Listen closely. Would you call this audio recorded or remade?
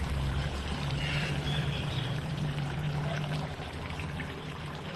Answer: remade